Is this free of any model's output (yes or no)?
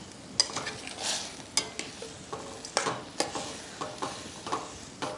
yes